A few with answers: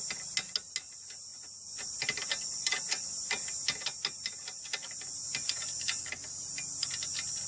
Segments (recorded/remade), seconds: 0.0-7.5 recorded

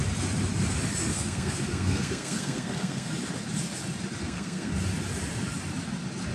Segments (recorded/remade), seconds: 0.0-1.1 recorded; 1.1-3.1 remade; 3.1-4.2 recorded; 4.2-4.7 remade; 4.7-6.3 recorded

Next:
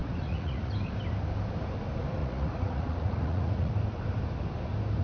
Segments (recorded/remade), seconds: 0.0-0.7 remade; 0.7-2.2 recorded; 2.2-3.7 remade; 3.7-5.0 recorded

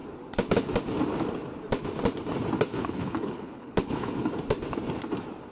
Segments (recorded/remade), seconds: 0.0-2.7 recorded; 2.7-4.3 remade; 4.3-5.5 recorded